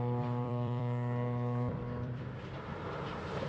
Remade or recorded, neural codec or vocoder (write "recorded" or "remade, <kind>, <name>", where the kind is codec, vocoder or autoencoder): remade, vocoder, BigVGAN v2